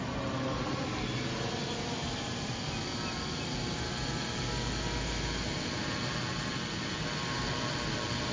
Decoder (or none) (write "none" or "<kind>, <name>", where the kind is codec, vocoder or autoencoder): none